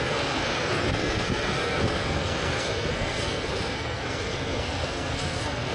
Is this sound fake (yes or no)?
yes